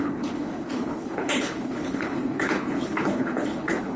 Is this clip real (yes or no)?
no